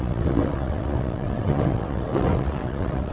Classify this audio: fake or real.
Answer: fake